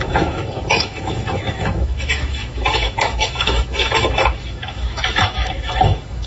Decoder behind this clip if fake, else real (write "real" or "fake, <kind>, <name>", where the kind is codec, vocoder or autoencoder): fake, autoencoder, DAC-VAE